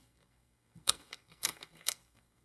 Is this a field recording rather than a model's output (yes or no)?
no